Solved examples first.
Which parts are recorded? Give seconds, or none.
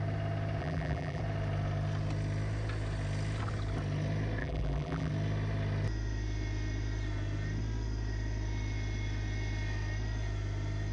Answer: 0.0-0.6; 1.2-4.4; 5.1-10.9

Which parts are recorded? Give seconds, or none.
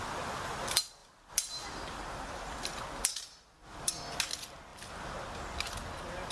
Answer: 0.0-1.0; 3.9-4.7; 5.3-6.3